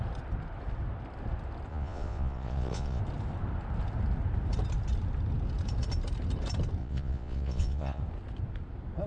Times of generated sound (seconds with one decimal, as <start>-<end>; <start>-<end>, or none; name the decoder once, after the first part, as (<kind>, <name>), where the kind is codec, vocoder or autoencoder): 1.7-3.0 (vocoder, Vocos); 6.8-8.0